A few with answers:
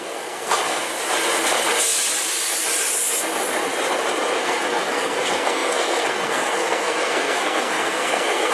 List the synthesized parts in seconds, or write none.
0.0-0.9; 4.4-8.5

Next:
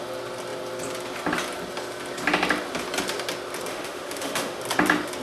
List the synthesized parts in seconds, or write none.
3.7-4.6

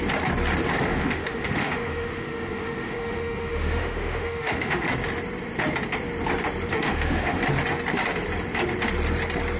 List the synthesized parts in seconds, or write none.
0.9-4.9; 6.7-7.4

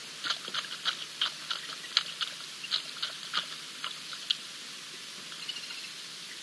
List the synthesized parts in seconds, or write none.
none